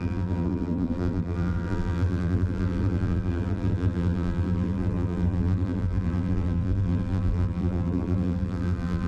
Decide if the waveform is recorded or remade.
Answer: remade